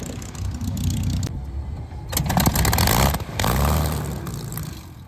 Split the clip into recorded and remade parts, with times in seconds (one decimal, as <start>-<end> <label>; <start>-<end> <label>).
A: 0.0-1.4 remade; 1.4-4.5 recorded; 4.5-5.1 remade